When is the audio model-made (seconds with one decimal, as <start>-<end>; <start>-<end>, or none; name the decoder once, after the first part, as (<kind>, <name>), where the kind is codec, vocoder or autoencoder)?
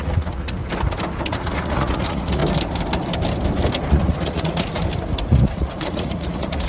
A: 0.0-0.6 (vocoder, Vocos); 1.2-2.4; 3.9-4.8; 5.3-6.7